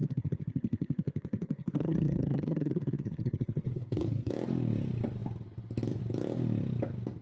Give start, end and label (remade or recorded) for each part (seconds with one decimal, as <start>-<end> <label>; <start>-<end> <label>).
0.0-4.3 remade; 4.3-7.2 recorded